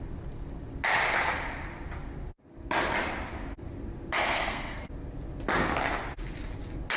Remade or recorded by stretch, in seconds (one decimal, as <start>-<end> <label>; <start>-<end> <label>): 0.0-4.2 recorded; 4.2-4.9 remade; 4.9-7.0 recorded